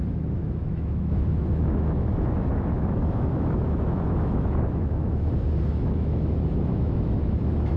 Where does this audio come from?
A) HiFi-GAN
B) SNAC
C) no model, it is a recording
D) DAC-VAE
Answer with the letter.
D